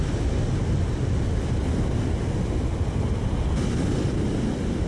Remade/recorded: recorded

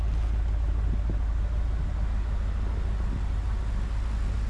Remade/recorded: recorded